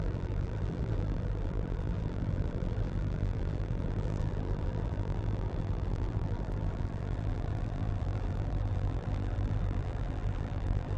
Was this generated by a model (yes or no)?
yes